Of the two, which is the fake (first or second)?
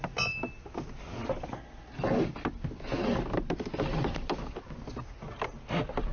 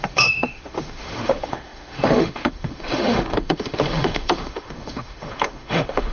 second